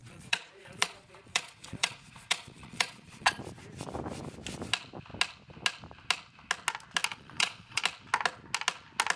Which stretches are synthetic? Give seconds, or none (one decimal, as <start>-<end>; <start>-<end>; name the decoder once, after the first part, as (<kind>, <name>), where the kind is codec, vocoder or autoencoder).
0.0-3.4 (vocoder, Vocos); 7.1-7.8

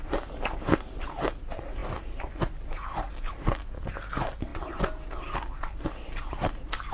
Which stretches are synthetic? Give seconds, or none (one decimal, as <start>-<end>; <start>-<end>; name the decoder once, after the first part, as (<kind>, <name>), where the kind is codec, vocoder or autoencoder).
none

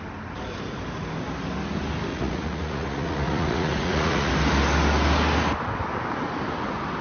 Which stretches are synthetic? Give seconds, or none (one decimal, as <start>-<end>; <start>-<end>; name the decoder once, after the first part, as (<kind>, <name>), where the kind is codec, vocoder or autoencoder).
2.1-4.3 (vocoder, Vocos)

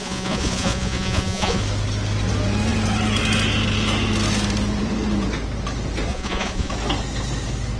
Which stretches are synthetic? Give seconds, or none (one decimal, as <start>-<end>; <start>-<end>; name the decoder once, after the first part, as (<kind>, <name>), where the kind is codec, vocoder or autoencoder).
0.0-1.6 (vocoder, Vocos); 6.1-6.7